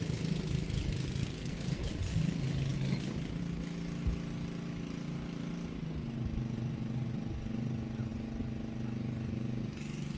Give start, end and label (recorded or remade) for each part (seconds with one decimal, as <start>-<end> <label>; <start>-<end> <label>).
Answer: 0.0-1.2 recorded; 1.2-1.9 remade; 1.9-10.2 recorded